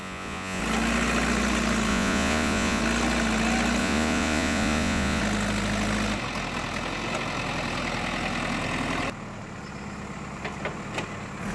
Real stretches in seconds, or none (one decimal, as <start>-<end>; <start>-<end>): 0.6-1.9; 2.8-3.8; 5.2-11.5